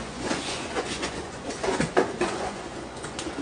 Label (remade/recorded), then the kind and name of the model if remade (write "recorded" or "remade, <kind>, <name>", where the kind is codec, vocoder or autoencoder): remade, vocoder, Vocos